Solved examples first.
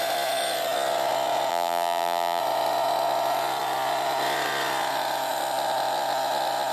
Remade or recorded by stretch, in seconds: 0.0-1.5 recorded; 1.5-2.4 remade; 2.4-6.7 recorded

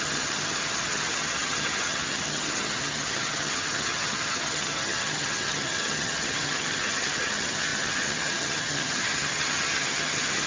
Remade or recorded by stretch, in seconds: 0.0-10.5 remade

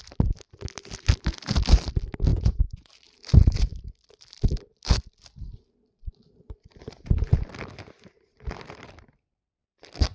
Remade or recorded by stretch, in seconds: 0.0-2.3 recorded; 2.3-2.9 remade; 2.9-10.1 recorded

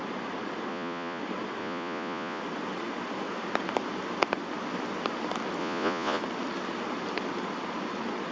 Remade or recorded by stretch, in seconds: 0.0-0.7 recorded; 0.7-1.2 remade; 1.2-1.6 recorded; 1.6-2.4 remade; 2.4-5.6 recorded; 5.6-6.2 remade; 6.2-8.3 recorded

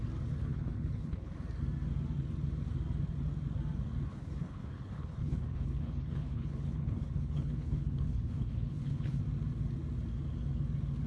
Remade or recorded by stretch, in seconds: 0.0-0.4 recorded; 0.4-1.3 remade; 1.3-4.1 recorded; 4.1-9.2 remade; 9.2-11.1 recorded

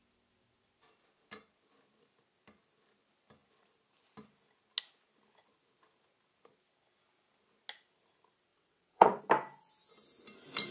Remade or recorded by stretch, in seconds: 0.0-8.5 recorded; 8.5-9.2 remade; 9.2-10.7 recorded